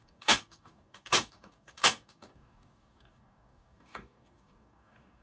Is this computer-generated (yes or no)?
yes